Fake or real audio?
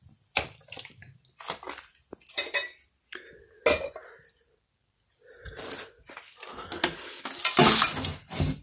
real